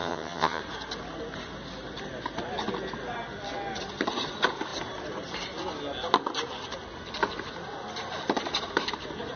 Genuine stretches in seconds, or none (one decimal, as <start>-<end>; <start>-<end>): 0.6-9.4